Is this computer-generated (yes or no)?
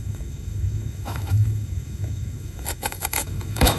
yes